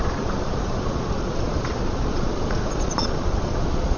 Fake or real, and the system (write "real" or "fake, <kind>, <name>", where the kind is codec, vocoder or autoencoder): fake, vocoder, Vocos